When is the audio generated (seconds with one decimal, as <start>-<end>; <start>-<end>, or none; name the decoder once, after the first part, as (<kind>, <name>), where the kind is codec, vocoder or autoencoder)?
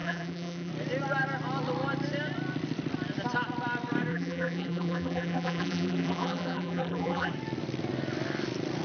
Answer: 0.0-0.7 (vocoder, BigVGAN v2); 4.1-7.3